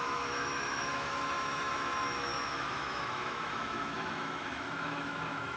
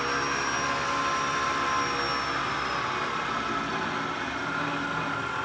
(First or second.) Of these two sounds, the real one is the second